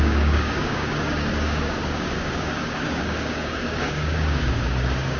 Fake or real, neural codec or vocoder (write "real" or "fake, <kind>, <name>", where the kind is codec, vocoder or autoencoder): fake, codec, DAC